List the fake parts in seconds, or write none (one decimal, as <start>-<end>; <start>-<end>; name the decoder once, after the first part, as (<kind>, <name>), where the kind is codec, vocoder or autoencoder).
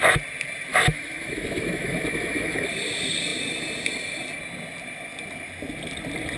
0.7-2.7 (autoencoder, DAC-VAE)